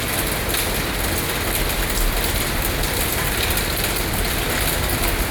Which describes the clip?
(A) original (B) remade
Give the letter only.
A